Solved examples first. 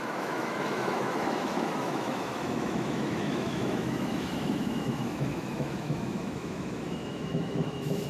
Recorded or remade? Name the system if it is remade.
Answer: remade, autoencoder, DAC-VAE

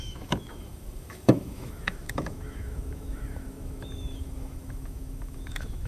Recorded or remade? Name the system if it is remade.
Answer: remade, autoencoder, DAC-VAE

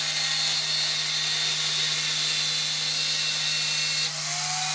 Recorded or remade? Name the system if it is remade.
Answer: recorded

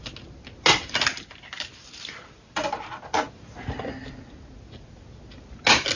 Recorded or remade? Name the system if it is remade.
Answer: recorded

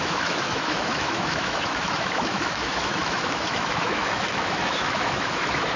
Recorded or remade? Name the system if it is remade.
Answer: remade, autoencoder, DAC-VAE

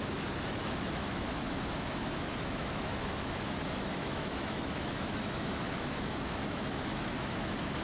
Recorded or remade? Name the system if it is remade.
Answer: remade, autoencoder, DAC-VAE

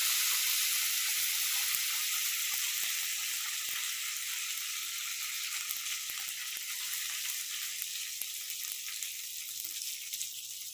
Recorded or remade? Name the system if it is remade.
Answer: recorded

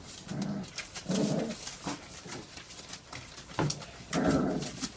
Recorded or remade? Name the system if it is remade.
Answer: recorded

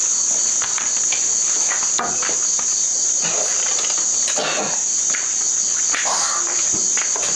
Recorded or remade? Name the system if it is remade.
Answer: recorded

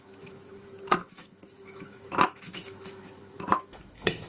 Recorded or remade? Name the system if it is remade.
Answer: remade, autoencoder, DAC-VAE